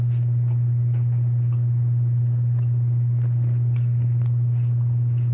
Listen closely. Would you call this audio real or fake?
real